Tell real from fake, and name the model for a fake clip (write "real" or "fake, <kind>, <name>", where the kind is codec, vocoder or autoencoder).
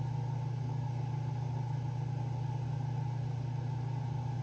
real